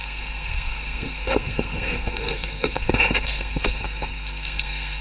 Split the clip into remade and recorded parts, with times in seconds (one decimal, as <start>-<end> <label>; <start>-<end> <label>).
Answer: 0.0-5.0 remade